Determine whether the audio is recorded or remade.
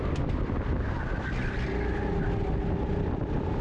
recorded